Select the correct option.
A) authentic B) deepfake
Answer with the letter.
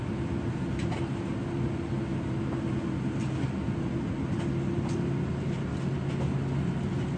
A